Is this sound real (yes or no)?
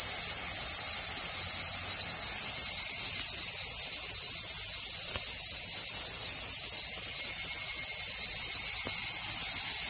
yes